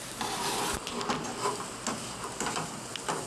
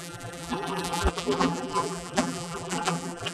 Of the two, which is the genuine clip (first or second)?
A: first